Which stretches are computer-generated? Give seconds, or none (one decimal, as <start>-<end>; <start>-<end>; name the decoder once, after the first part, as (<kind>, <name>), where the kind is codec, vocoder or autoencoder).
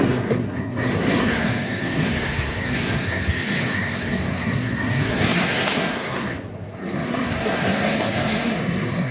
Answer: 0.0-9.1 (codec, SNAC)